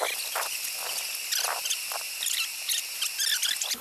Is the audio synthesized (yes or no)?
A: no